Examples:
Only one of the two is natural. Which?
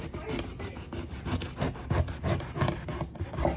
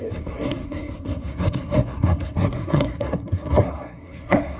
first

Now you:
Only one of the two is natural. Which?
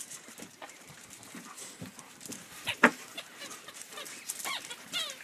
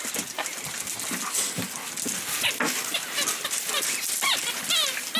second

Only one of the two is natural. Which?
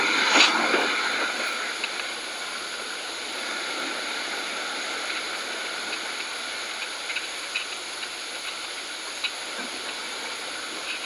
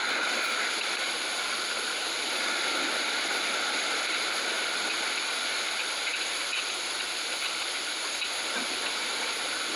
first